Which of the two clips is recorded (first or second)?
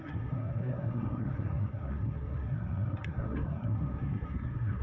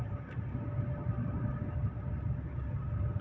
second